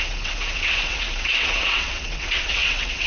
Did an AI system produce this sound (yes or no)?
yes